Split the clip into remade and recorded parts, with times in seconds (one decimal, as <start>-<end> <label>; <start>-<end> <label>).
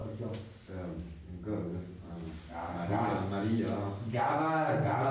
0.0-5.1 recorded